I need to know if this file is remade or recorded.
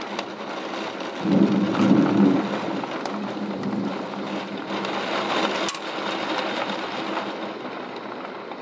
recorded